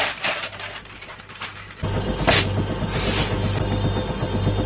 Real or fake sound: real